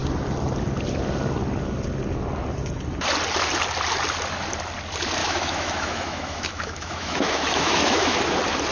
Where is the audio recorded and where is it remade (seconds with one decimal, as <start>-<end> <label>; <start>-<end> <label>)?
0.0-5.2 recorded; 5.2-8.2 remade; 8.2-8.7 recorded